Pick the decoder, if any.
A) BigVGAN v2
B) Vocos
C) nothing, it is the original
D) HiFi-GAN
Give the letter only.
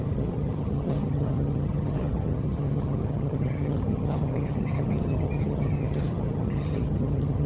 D